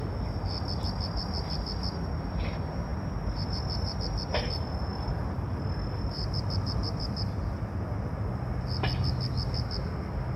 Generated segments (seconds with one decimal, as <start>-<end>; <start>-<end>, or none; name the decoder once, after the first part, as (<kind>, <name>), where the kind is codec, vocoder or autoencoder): 4.9-7.7 (vocoder, BigVGAN v2)